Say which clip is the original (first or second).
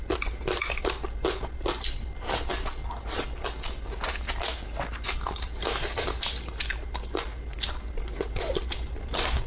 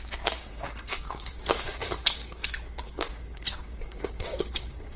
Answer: first